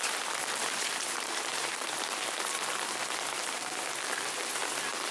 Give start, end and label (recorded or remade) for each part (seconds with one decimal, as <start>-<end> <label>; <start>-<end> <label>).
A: 0.0-5.1 recorded